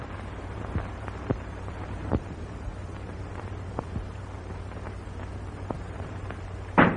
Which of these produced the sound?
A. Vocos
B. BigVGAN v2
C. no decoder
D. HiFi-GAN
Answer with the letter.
B